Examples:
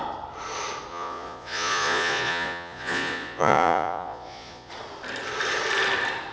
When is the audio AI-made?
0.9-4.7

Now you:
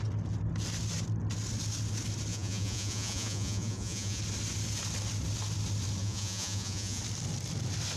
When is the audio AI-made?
2.3-4.2; 6.0-7.0

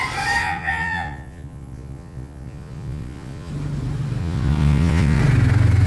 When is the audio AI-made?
0.4-3.5; 4.2-5.2

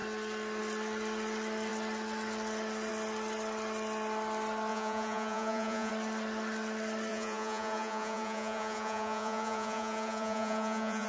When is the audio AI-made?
4.7-5.9; 7.1-11.1

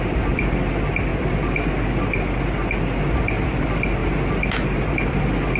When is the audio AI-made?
none

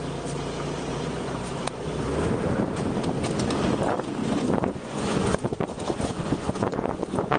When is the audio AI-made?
0.9-1.9; 4.2-7.4